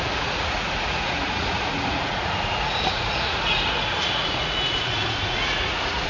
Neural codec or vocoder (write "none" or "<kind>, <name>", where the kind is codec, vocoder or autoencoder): vocoder, Vocos